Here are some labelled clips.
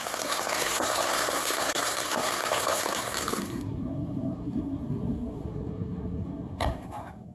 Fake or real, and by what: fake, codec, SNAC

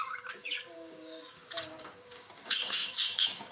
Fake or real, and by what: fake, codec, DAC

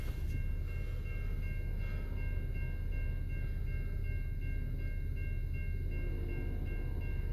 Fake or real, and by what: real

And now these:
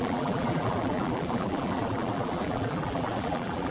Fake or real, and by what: fake, vocoder, BigVGAN v2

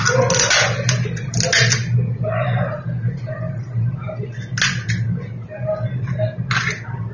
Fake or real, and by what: real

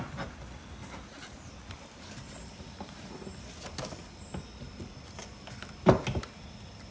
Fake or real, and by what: real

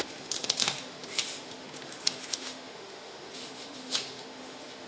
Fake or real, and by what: fake, autoencoder, DAC-VAE